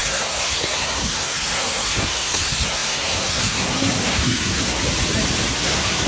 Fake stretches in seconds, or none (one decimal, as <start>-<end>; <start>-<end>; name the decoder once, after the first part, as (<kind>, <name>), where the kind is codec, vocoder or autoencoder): 0.0-4.8 (codec, SNAC); 5.5-6.1